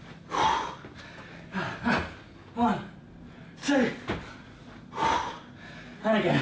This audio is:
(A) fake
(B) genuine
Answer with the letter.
B